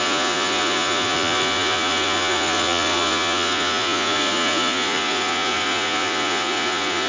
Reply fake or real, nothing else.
fake